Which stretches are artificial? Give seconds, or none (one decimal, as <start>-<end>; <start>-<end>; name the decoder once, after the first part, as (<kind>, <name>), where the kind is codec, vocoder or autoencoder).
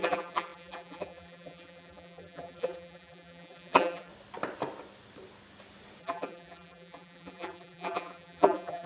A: 0.0-4.1 (vocoder, BigVGAN v2); 6.0-8.9